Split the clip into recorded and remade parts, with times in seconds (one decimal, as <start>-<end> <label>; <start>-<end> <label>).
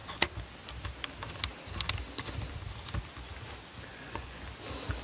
0.0-3.9 recorded; 3.9-4.4 remade; 4.4-5.0 recorded